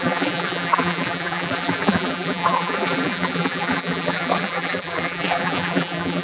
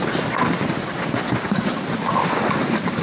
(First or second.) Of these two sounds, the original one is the second